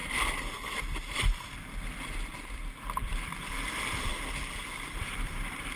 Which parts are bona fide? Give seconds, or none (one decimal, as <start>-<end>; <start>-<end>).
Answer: 3.5-4.1; 5.3-5.8